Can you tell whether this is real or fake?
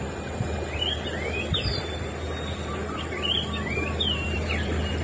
fake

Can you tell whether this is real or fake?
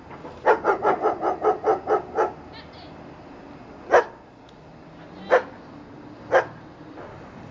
real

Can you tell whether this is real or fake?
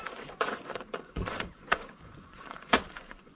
fake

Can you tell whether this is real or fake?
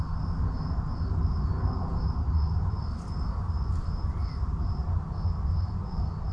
real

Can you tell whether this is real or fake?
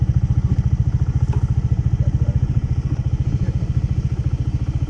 fake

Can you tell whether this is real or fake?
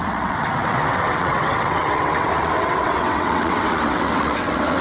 fake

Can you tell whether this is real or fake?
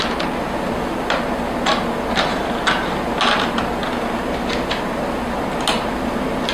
real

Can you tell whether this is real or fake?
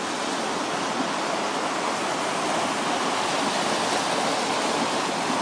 real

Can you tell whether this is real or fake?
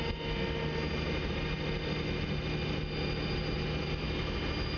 real